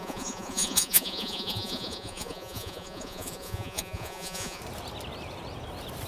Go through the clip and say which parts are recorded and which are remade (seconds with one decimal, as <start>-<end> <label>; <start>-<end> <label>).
0.0-4.6 remade; 4.6-6.1 recorded